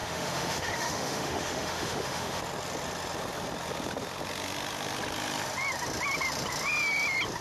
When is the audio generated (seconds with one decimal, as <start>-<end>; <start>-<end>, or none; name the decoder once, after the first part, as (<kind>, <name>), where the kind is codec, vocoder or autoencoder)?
0.0-2.4 (autoencoder, DAC-VAE)